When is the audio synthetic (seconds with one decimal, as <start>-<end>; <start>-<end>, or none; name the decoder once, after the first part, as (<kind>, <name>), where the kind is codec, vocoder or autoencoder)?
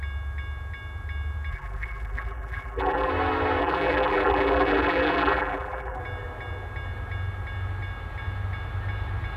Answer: 1.5-3.1 (vocoder, BigVGAN v2); 3.6-6.0